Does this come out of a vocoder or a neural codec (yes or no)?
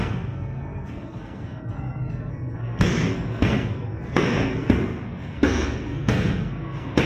yes